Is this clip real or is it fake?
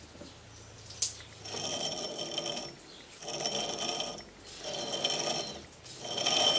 real